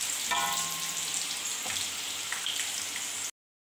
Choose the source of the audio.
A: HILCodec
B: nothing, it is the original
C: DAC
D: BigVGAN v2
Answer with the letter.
B